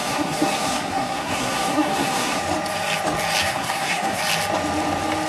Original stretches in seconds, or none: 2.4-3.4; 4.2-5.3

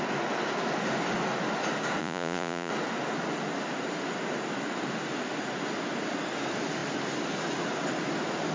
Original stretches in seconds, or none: 0.0-2.0; 2.7-8.5

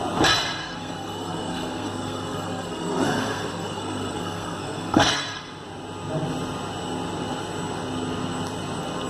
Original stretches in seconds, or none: 0.0-0.6; 5.4-9.1

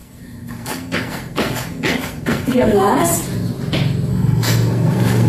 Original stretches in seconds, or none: 3.1-4.1